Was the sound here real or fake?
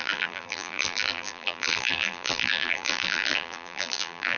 fake